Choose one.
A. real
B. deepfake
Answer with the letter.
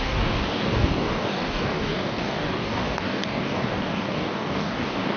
B